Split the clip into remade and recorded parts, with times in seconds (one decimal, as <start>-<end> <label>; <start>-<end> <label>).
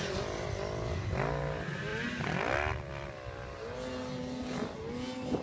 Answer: 0.0-5.4 recorded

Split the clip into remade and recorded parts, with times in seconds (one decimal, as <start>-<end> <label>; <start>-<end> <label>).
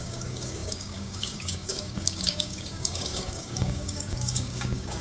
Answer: 0.0-5.0 remade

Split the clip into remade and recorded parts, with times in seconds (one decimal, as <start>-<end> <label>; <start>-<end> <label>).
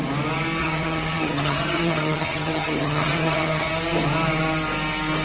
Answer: 0.0-0.6 recorded; 0.6-3.7 remade; 3.7-5.2 recorded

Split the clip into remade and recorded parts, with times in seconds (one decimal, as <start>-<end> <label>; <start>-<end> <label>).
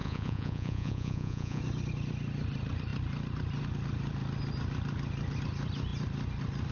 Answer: 0.0-1.6 remade; 1.6-6.7 recorded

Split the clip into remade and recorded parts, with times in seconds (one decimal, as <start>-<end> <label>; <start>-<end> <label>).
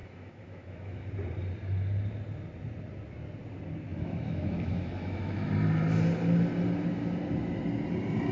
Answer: 0.0-1.1 remade; 1.1-3.9 recorded; 3.9-5.5 remade; 5.5-8.3 recorded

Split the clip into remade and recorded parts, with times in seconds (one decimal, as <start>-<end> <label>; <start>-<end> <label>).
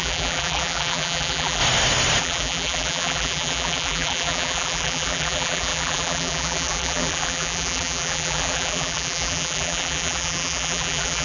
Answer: 0.0-1.6 remade; 1.6-2.2 recorded; 2.2-11.2 remade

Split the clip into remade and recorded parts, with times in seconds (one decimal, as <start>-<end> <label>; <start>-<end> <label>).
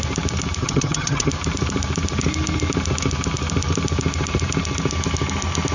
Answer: 0.0-0.6 recorded; 0.6-1.3 remade; 1.3-5.7 recorded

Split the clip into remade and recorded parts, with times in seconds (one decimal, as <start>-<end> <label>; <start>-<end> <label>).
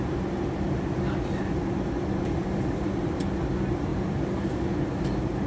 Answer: 0.0-2.2 recorded; 2.2-3.2 remade; 3.2-3.9 recorded; 3.9-4.5 remade; 4.5-5.5 recorded